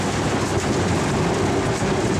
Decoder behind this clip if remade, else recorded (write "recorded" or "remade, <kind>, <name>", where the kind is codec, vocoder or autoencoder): recorded